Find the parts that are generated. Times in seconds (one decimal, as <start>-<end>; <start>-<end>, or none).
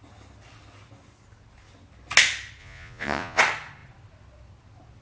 2.6-3.4